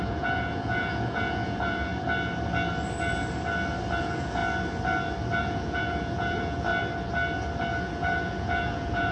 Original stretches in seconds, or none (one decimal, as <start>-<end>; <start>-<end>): 1.9-4.0; 4.4-5.4; 6.7-7.8